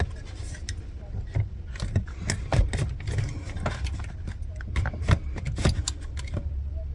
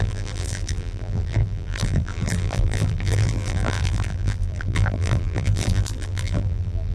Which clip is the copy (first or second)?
second